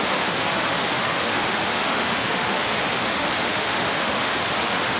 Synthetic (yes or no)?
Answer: yes